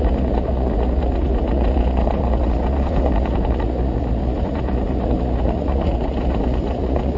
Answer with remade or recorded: remade